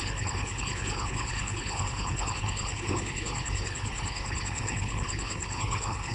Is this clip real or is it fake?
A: fake